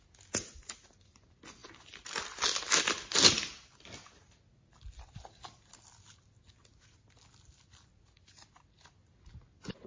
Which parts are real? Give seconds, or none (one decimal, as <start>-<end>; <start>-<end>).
0.0-9.9

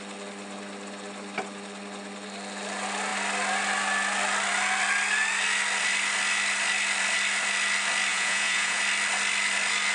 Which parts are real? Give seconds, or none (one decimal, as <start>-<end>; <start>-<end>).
0.0-8.1; 8.8-9.9

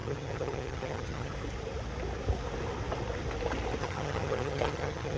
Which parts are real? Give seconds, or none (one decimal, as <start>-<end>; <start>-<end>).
1.3-3.8